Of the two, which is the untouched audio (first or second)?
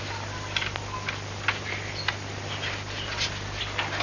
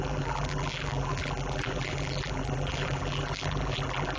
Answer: first